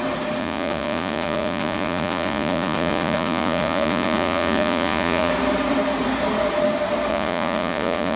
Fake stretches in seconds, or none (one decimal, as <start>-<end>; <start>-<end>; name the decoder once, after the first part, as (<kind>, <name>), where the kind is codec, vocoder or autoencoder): 0.4-5.3 (vocoder, Vocos); 7.1-8.2